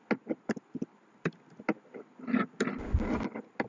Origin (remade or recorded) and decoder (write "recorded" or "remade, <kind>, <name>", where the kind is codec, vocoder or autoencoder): recorded